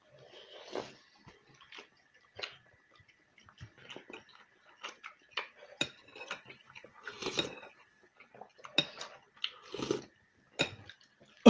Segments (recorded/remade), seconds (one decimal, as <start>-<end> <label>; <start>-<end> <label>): 0.0-11.5 recorded